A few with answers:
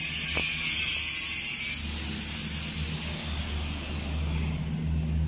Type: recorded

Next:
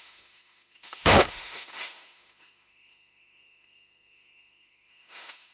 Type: remade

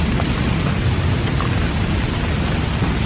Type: recorded